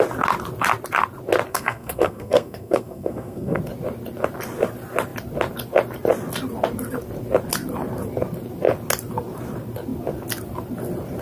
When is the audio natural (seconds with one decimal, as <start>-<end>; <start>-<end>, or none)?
0.0-1.5; 3.6-11.2